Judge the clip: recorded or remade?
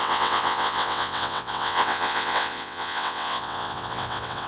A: remade